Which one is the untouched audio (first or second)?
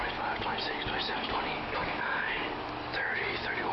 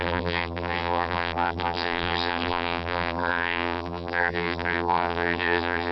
first